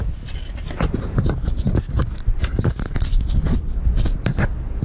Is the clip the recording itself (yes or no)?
yes